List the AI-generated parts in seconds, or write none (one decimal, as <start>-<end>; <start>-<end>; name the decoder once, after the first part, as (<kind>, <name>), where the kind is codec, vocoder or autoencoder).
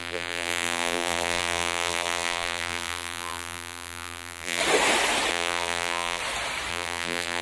0.0-4.6 (vocoder, BigVGAN v2); 5.3-6.2; 6.7-7.4